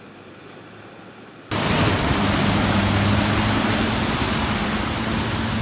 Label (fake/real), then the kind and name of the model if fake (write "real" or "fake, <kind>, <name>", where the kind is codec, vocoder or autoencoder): real